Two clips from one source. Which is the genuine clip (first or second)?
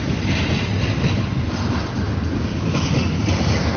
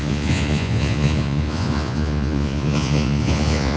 first